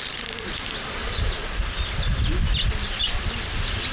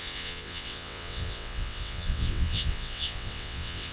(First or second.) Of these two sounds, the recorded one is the first